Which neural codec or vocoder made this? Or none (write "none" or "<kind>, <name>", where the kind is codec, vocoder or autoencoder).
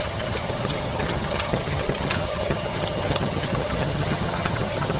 vocoder, HiFi-GAN